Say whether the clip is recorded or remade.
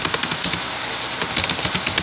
recorded